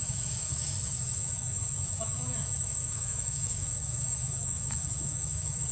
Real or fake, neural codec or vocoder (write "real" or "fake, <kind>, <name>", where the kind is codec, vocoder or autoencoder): fake, autoencoder, DAC-VAE